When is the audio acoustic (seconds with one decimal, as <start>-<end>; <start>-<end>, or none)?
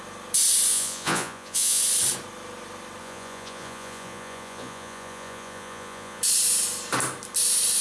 0.0-0.7; 1.8-3.0; 6.2-7.8